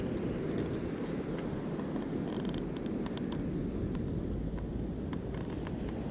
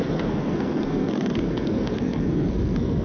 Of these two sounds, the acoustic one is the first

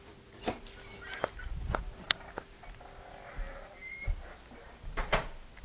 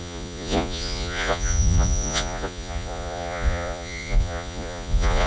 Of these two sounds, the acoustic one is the first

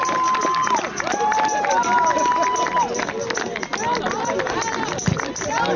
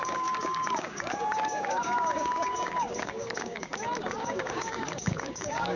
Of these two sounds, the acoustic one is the first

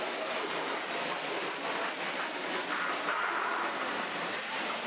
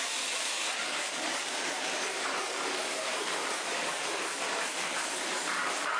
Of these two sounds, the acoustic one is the first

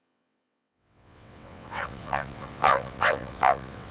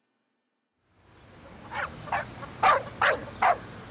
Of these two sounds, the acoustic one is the second